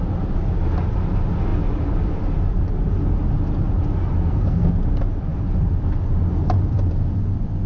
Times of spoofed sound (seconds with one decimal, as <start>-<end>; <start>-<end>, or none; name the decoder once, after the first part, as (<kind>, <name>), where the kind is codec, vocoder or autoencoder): 4.2-4.7 (codec, SNAC)